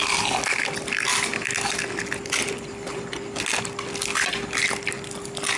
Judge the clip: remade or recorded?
recorded